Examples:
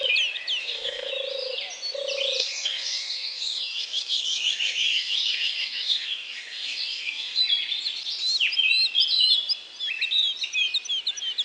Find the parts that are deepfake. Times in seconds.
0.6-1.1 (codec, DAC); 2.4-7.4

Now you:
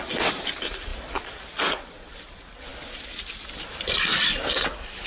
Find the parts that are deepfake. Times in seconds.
none